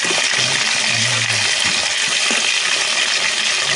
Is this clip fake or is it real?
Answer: real